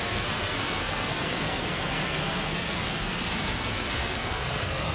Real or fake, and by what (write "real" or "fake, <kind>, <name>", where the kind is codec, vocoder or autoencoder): fake, codec, SNAC